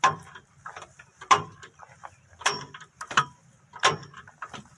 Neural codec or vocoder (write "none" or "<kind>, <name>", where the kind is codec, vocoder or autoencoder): none